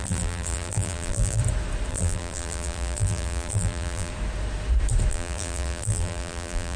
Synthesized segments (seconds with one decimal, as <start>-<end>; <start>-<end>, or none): 0.0-1.4; 1.9-4.1; 5.1-6.8